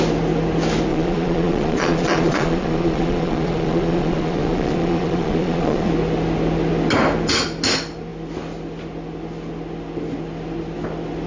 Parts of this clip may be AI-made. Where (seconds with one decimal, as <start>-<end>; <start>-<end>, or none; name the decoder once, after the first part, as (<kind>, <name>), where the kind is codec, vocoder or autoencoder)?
0.9-5.9 (vocoder, Vocos)